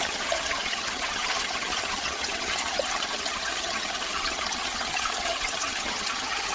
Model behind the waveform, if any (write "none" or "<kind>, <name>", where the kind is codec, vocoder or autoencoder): vocoder, HiFi-GAN